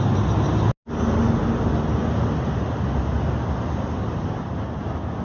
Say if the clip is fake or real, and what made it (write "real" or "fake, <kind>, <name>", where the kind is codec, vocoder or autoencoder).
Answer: real